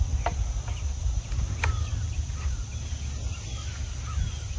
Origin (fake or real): real